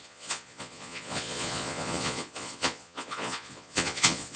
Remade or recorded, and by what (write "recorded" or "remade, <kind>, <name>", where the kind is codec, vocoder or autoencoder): remade, vocoder, Vocos